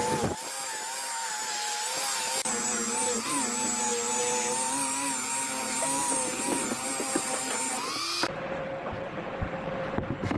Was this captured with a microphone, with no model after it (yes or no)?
yes